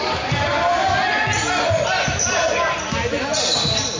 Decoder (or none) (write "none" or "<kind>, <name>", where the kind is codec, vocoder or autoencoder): none